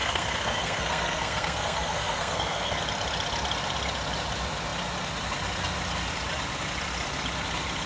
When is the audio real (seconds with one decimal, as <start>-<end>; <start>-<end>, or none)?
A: 2.8-7.9